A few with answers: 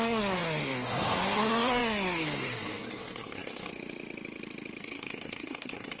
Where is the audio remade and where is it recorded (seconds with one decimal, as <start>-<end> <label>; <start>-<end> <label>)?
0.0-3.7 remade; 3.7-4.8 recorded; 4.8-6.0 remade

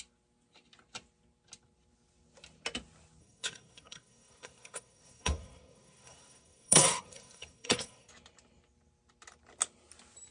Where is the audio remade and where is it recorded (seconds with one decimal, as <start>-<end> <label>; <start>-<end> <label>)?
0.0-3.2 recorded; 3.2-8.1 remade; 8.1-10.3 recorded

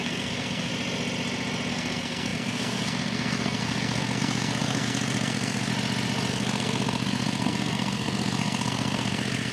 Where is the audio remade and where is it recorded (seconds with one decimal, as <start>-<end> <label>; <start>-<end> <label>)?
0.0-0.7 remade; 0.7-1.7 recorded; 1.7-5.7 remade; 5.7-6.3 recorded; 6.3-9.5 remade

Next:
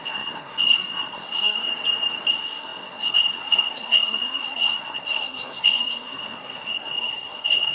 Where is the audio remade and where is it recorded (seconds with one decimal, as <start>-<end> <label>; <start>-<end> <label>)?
0.0-1.7 remade; 1.7-2.3 recorded; 2.3-7.7 remade

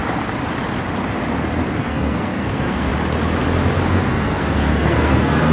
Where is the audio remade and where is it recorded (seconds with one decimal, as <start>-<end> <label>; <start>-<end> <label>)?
0.0-1.8 recorded; 1.8-2.9 remade; 2.9-3.9 recorded; 3.9-5.5 remade